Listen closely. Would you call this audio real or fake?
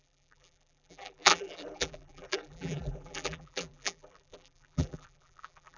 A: fake